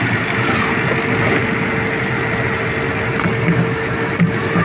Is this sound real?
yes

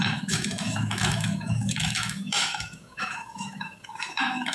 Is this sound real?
no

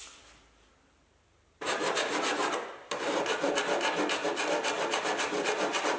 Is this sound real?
no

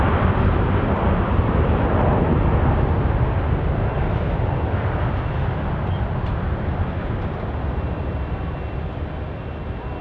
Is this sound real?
yes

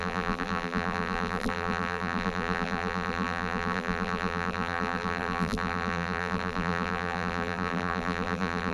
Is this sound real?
no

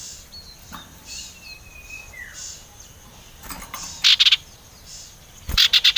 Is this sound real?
yes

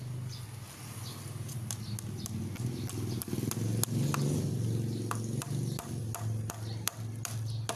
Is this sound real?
yes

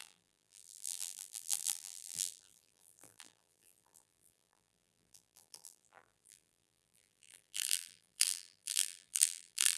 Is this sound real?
no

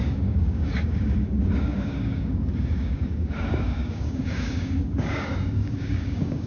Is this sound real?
no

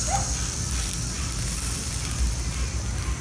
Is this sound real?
yes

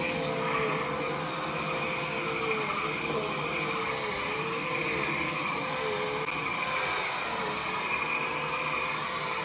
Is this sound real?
yes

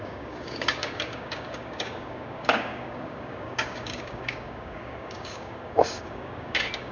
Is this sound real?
no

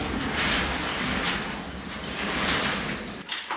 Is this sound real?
yes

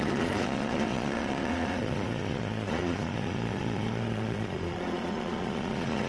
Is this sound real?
no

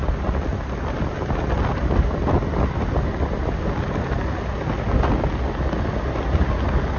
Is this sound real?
yes